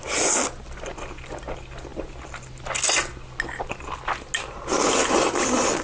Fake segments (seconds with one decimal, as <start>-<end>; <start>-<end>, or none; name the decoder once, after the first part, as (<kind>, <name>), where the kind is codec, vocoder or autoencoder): none